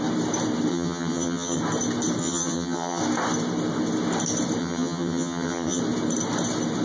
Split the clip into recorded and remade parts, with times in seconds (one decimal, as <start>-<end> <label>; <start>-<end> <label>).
0.0-0.7 recorded; 0.7-1.6 remade; 1.6-2.2 recorded; 2.2-3.0 remade; 3.0-4.6 recorded; 4.6-5.8 remade; 5.8-6.8 recorded